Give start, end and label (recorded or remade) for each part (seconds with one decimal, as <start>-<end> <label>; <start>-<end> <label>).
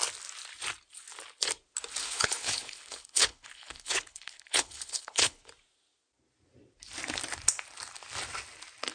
0.0-2.0 recorded; 2.0-5.5 remade; 5.5-8.9 recorded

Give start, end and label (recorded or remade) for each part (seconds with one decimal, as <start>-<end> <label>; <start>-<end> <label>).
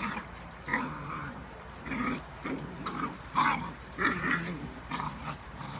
0.0-5.8 remade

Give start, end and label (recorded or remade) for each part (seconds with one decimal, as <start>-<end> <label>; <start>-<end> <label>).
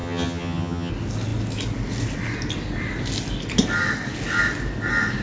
0.0-0.9 remade; 0.9-5.2 recorded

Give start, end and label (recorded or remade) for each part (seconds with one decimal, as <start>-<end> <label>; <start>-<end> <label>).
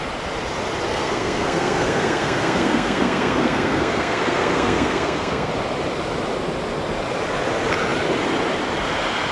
0.0-0.9 recorded; 0.9-5.5 remade; 5.5-9.3 recorded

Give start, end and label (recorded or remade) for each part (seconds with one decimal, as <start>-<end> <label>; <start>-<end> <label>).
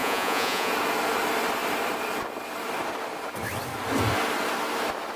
0.0-0.7 remade; 0.7-5.2 recorded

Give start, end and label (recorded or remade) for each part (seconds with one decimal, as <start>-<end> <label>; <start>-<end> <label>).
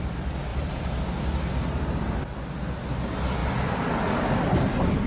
0.0-0.5 recorded; 0.5-1.0 remade; 1.0-3.4 recorded; 3.4-5.1 remade